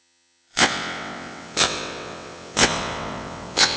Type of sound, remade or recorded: remade